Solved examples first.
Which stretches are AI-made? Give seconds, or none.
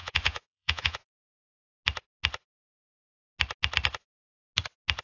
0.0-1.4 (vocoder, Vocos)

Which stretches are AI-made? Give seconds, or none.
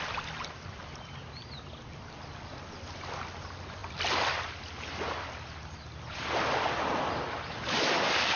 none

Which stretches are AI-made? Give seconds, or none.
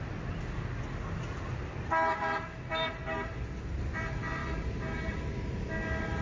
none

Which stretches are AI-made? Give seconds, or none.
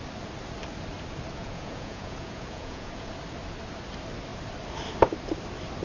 1.4-3.1 (vocoder, Vocos)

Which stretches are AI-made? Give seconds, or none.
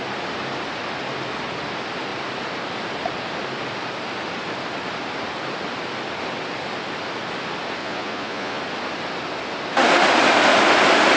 7.8-8.6 (vocoder, Vocos)